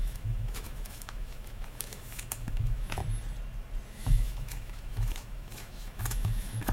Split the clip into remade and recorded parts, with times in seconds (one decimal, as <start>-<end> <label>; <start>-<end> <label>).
0.0-3.0 remade; 3.0-3.9 recorded; 3.9-6.7 remade